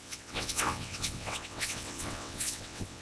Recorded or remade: remade